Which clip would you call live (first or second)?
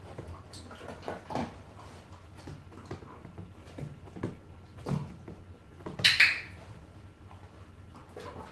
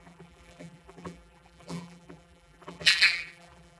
first